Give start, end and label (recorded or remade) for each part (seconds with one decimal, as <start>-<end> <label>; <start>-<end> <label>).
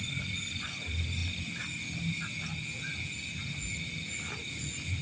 0.0-5.0 recorded